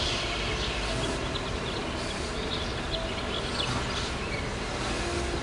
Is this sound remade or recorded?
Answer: recorded